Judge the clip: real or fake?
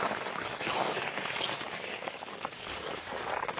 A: fake